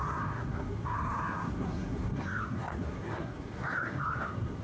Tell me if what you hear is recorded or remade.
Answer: remade